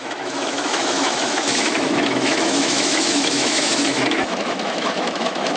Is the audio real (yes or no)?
no